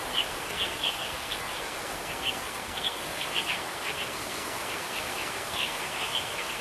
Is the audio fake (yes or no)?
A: yes